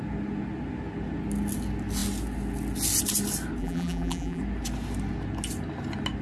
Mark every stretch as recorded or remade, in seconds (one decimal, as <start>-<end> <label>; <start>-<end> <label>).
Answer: 0.0-3.6 recorded; 3.6-4.4 remade; 4.4-6.2 recorded